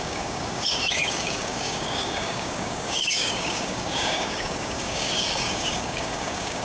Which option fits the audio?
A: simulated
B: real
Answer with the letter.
A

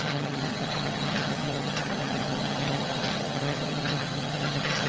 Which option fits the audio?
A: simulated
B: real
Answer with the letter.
A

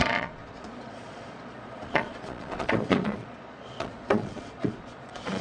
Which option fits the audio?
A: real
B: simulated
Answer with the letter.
B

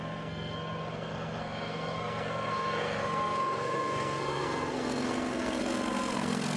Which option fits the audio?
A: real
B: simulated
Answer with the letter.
B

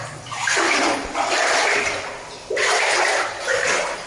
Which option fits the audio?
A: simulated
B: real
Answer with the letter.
B